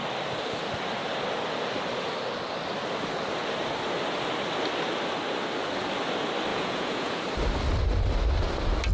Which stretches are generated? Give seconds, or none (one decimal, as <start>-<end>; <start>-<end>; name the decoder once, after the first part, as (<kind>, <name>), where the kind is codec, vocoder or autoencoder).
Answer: 6.5-7.2 (vocoder, Vocos)